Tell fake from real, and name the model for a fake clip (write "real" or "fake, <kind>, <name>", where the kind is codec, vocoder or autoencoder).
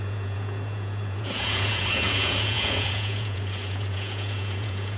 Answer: fake, vocoder, Vocos